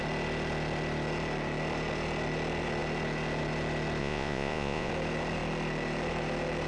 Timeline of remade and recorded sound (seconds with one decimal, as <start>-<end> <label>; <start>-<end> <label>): 0.0-4.0 recorded; 4.0-4.9 remade; 4.9-6.7 recorded